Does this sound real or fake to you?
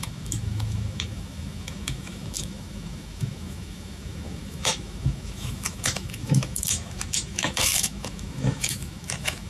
fake